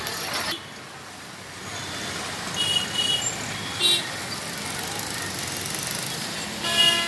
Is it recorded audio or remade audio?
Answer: recorded